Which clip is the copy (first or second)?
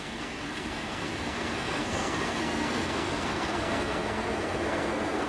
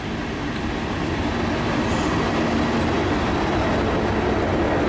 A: first